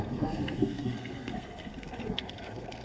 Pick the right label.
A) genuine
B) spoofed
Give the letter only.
B